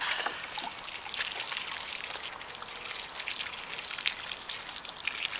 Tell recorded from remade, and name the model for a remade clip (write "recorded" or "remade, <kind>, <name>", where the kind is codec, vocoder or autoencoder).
recorded